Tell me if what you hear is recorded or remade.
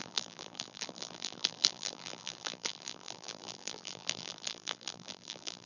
remade